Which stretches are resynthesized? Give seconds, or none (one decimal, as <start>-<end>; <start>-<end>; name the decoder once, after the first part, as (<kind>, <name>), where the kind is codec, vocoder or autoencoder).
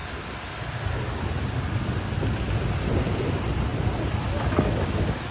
none